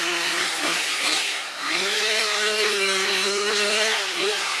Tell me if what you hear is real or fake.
fake